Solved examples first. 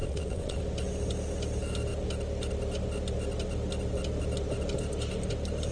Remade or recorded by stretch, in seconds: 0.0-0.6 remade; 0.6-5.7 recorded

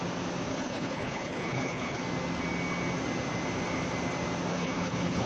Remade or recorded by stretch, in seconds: 0.0-0.5 recorded; 0.5-2.0 remade; 2.0-4.5 recorded; 4.5-5.3 remade

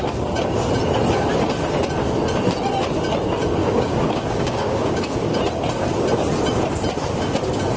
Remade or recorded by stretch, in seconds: 0.0-3.6 recorded; 3.6-5.4 remade; 5.4-7.8 recorded

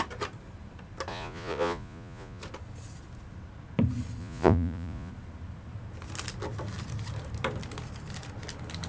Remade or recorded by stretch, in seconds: 0.0-1.1 recorded; 1.1-2.4 remade; 2.4-4.2 recorded; 4.2-5.1 remade; 5.1-8.9 recorded

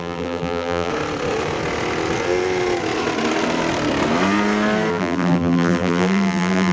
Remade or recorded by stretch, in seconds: 0.0-0.9 remade; 0.9-4.9 recorded; 4.9-6.7 remade

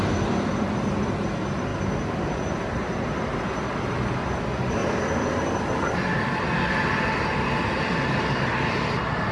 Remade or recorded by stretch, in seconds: 0.0-1.7 remade; 1.7-3.9 recorded; 3.9-4.8 remade; 4.8-7.7 recorded; 7.7-9.3 remade

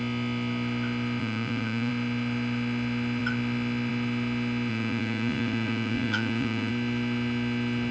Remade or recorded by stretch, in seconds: 0.0-1.2 recorded; 1.2-1.9 remade; 1.9-4.7 recorded; 4.7-6.7 remade; 6.7-7.9 recorded

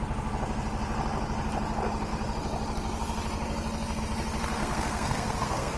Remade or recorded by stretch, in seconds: 0.0-4.6 recorded; 4.6-5.8 remade